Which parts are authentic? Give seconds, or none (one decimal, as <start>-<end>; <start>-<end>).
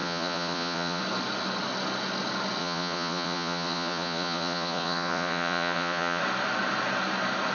1.0-2.6; 6.2-7.5